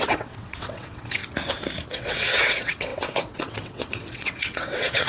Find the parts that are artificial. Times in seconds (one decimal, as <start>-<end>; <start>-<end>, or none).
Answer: 0.0-1.2; 1.9-5.1